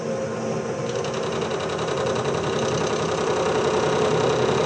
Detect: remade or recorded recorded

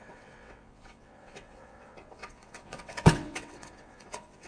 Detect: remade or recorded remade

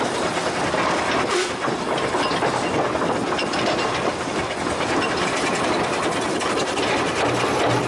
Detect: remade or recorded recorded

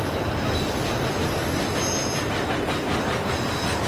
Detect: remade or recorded recorded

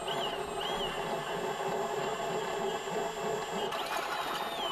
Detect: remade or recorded recorded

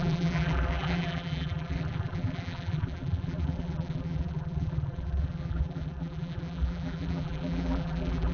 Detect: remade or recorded remade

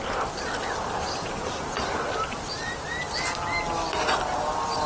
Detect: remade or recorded recorded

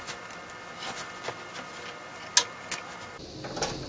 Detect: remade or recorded recorded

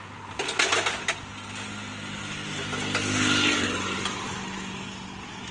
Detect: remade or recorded recorded